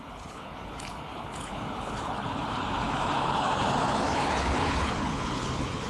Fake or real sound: fake